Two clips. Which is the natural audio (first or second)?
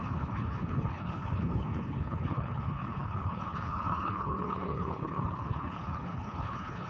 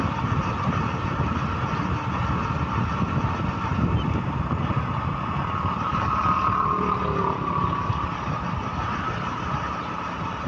second